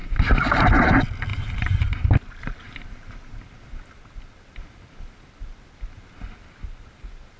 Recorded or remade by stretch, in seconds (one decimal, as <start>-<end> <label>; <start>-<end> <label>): 0.0-0.9 remade; 0.9-1.3 recorded; 1.3-3.4 remade; 3.4-7.4 recorded